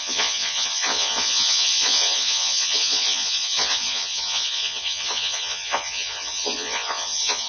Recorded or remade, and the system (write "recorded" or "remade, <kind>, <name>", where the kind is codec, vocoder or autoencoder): remade, vocoder, Vocos